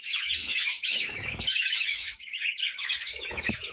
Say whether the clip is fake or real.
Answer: fake